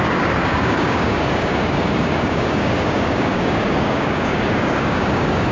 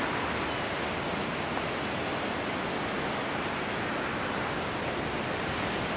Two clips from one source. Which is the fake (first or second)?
first